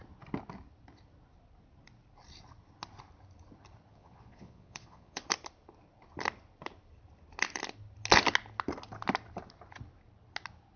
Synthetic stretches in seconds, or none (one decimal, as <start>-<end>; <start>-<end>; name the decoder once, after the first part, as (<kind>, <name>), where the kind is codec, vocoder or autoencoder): 3.9-5.2 (vocoder, Vocos)